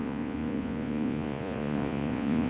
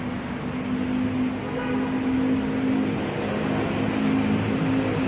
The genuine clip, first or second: second